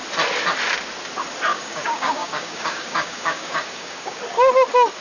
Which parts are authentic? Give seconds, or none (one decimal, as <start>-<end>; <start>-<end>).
0.0-1.5; 4.2-5.0